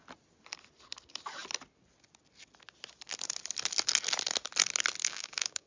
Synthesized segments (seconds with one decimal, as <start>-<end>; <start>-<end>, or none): 5.0-5.7